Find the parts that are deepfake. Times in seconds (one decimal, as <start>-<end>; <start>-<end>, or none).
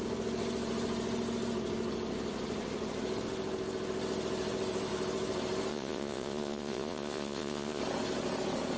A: 5.7-7.8